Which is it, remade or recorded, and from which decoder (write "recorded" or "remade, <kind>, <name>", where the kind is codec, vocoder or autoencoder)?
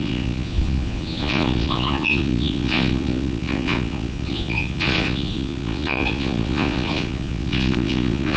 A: remade, vocoder, Vocos